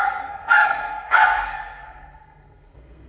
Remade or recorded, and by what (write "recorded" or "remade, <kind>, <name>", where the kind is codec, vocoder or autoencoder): remade, codec, SNAC